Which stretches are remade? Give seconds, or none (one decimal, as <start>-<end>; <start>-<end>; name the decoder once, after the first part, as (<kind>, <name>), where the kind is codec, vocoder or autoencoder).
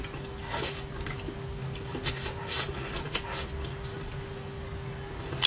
none